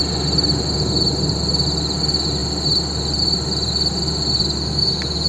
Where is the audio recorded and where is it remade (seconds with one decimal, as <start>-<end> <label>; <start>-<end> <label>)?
0.0-5.3 recorded